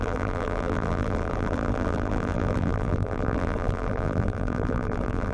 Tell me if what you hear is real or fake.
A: fake